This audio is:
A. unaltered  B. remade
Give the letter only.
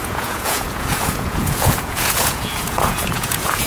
B